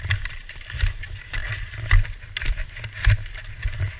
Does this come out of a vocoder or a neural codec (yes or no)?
no